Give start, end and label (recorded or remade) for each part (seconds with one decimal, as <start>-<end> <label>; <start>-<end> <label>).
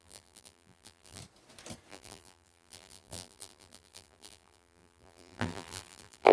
0.0-1.2 remade; 1.2-1.9 recorded; 1.9-6.3 remade